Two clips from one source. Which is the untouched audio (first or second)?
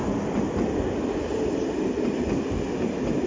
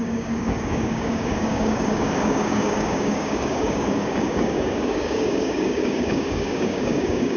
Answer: first